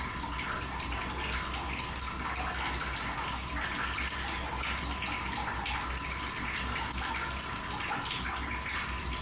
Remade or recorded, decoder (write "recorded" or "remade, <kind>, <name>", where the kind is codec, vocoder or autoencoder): recorded